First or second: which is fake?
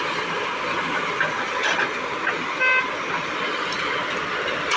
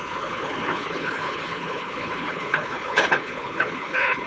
second